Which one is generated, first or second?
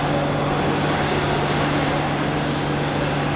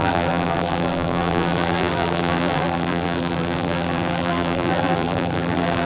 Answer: second